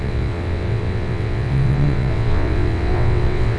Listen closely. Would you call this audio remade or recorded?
remade